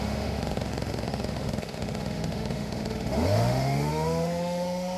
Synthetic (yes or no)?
yes